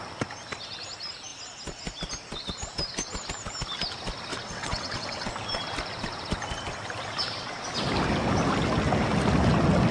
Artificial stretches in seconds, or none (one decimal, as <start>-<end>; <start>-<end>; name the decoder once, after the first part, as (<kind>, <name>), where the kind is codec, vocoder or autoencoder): 4.3-5.3 (vocoder, WaveNeXt)